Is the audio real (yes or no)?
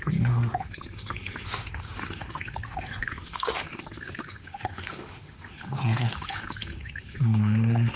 no